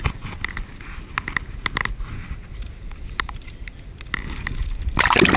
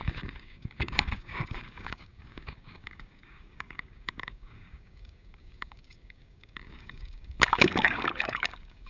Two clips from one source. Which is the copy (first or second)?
second